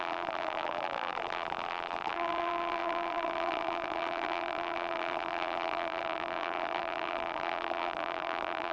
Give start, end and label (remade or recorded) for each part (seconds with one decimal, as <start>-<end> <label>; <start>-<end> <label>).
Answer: 0.0-8.7 remade